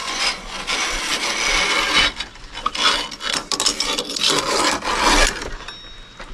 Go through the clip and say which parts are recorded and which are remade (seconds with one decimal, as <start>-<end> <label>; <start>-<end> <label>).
0.0-0.6 remade; 0.6-6.3 recorded